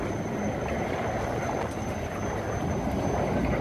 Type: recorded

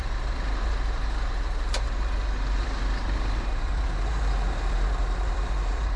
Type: remade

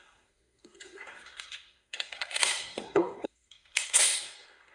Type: remade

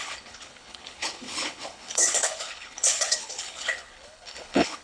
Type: remade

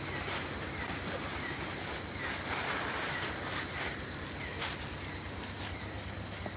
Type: recorded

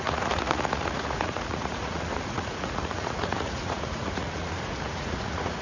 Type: remade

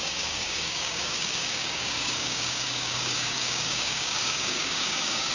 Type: remade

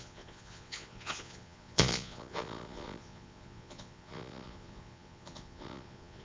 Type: remade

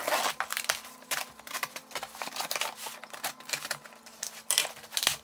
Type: remade